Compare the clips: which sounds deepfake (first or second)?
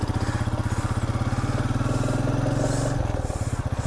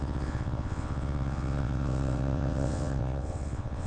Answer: second